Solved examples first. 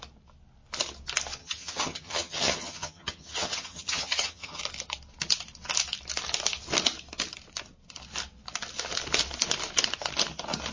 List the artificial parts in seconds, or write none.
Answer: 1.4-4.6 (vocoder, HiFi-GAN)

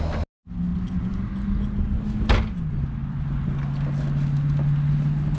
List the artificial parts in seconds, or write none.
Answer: none

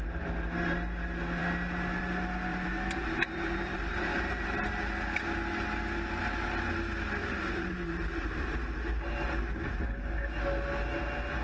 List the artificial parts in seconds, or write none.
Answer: 2.5-4.7 (vocoder, BigVGAN v2); 7.2-9.4

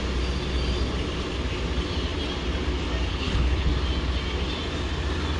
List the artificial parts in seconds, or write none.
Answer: 3.1-3.7 (codec, HILCodec)

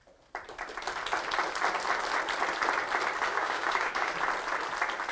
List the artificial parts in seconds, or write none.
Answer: 3.3-4.1 (codec, DAC)

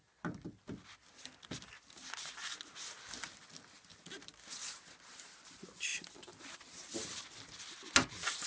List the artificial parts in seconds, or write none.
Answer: none